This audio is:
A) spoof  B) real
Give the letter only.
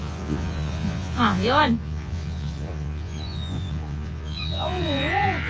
A